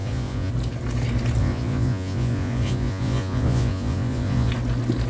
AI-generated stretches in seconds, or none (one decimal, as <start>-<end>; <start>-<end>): 0.0-0.5; 1.4-4.5